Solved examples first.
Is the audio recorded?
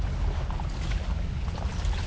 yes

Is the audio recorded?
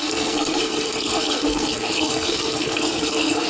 no